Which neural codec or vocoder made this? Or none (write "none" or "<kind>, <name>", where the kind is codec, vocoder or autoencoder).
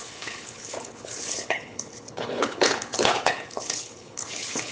codec, HILCodec